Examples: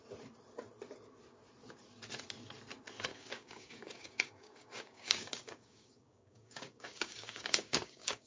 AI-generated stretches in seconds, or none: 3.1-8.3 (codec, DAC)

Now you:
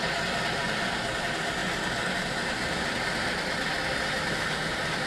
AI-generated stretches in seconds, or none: none

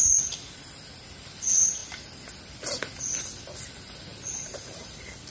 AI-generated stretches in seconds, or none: none

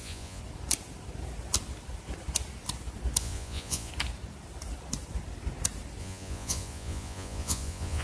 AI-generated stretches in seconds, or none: 0.0-0.4 (vocoder, Vocos); 3.2-3.9; 6.0-8.0

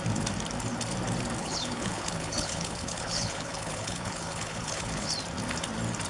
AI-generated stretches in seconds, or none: 1.4-5.1 (codec, HILCodec)

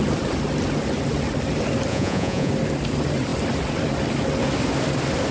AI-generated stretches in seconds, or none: 1.9-2.5 (vocoder, Vocos)

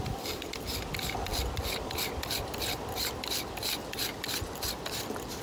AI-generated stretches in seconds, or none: none

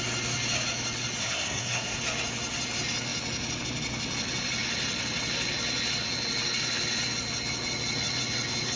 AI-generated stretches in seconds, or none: 1.2-2.0 (codec, SNAC)